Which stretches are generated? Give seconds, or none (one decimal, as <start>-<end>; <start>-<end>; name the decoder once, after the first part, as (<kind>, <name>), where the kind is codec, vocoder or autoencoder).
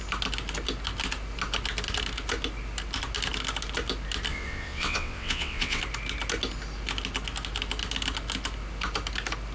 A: 4.3-5.8 (vocoder, WaveNeXt)